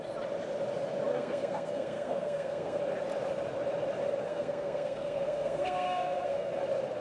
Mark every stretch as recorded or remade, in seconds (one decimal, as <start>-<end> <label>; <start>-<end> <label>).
0.0-1.1 recorded; 1.1-2.8 remade; 2.8-4.3 recorded; 4.3-6.5 remade; 6.5-7.0 recorded